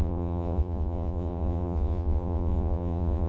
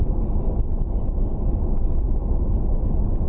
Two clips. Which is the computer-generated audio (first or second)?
first